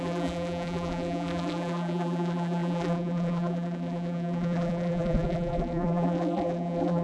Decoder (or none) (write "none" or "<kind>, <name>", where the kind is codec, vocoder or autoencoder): vocoder, BigVGAN v2